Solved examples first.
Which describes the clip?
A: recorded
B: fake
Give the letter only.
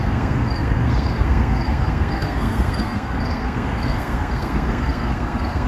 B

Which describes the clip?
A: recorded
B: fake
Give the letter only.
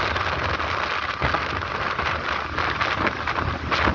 A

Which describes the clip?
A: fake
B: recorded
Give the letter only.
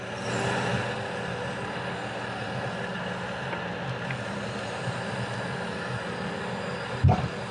B